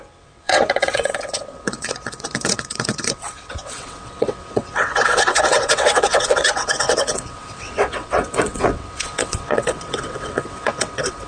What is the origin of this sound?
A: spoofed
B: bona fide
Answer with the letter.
A